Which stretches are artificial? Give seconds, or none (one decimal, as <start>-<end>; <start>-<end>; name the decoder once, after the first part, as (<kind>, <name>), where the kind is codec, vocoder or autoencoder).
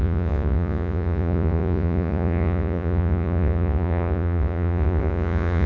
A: 0.0-5.7 (vocoder, Vocos)